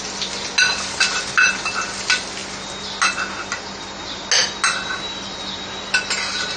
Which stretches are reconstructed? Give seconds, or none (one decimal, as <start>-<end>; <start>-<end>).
none